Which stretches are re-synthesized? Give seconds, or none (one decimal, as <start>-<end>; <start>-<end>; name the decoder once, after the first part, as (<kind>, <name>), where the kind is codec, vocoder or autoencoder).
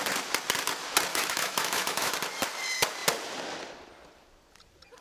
1.1-2.1 (autoencoder, DAC-VAE)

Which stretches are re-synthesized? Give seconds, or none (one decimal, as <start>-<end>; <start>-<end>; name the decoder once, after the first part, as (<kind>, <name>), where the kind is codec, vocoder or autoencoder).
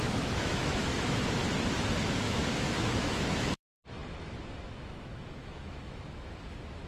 0.0-1.4 (autoencoder, DAC-VAE); 2.0-6.9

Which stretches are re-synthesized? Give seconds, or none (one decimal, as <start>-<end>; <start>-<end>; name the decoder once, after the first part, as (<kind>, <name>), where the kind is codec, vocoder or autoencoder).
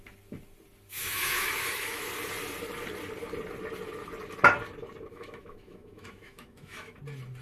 0.9-2.1 (autoencoder, DAC-VAE); 5.1-7.0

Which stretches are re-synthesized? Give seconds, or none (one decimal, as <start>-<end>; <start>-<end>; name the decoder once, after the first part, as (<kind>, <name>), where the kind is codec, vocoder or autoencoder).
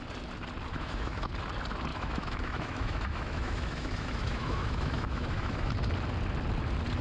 0.7-1.3 (autoencoder, DAC-VAE); 1.9-5.7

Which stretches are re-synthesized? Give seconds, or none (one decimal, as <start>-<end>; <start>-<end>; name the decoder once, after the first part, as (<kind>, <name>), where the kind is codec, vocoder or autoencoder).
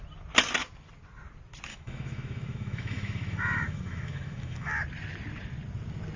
1.7-4.7 (autoencoder, DAC-VAE)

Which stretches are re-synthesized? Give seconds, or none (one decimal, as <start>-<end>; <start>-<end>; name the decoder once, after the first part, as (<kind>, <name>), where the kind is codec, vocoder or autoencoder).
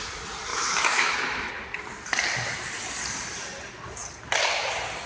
0.5-1.5 (autoencoder, DAC-VAE)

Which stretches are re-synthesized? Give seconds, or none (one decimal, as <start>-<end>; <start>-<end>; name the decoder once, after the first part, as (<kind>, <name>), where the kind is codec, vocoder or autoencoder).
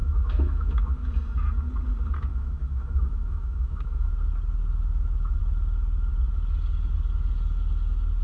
0.0-1.1 (autoencoder, DAC-VAE); 2.3-4.1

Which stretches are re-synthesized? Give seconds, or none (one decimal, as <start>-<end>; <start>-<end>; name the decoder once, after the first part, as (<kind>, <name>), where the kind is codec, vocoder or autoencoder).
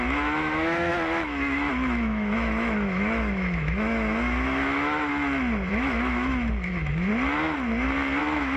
0.0-5.1 (autoencoder, DAC-VAE); 5.7-7.1; 8.2-8.6